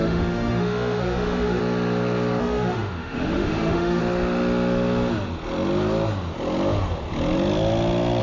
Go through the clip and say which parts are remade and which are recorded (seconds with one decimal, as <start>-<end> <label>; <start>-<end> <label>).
0.0-1.6 remade; 1.6-2.4 recorded; 2.4-4.0 remade; 4.0-8.2 recorded